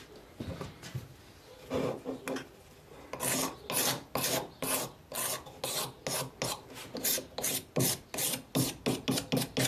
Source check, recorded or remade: recorded